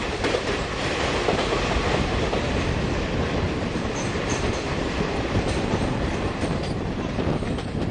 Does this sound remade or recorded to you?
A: remade